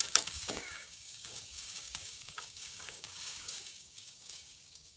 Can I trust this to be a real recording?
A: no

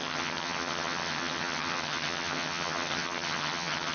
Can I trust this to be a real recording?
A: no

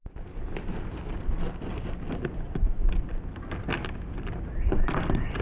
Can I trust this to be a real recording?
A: yes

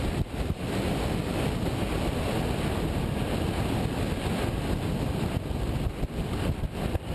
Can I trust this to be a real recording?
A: yes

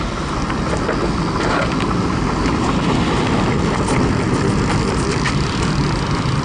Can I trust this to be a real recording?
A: yes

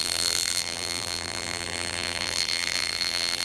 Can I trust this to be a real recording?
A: no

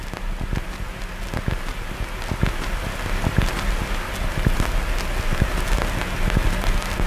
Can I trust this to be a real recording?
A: yes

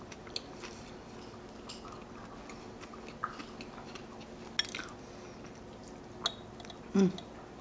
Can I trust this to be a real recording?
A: yes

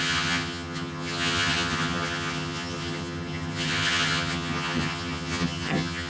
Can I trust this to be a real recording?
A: no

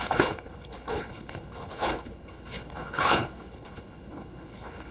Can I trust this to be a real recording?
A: no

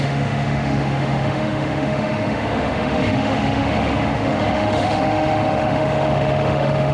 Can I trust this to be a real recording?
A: no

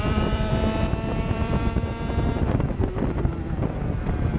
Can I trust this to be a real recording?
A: no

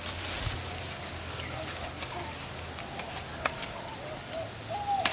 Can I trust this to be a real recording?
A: yes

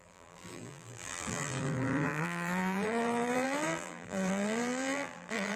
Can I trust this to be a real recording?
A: no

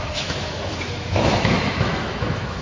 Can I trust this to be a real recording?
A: no